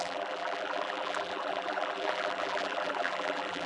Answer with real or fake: fake